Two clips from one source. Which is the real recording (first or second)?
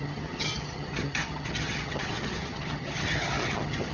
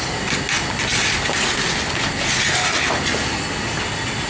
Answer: second